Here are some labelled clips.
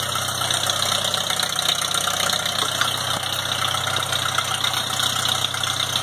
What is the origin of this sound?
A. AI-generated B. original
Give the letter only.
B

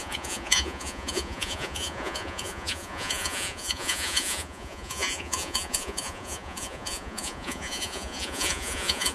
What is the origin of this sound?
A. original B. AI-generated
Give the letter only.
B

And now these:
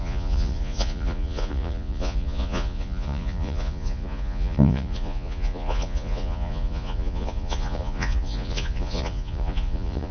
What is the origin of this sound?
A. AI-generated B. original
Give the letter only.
A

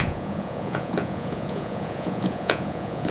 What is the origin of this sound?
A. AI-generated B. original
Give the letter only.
A